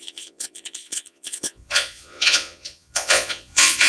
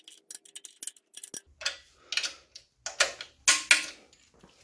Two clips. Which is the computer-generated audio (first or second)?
first